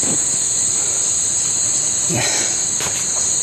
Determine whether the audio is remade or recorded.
recorded